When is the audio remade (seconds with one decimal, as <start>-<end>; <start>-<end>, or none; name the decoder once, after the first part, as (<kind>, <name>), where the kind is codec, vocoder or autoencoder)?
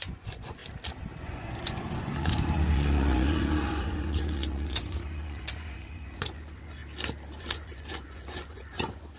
0.0-0.6 (vocoder, Vocos); 1.2-6.8; 7.4-9.2